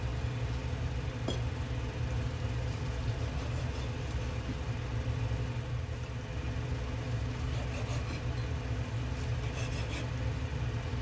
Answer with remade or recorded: recorded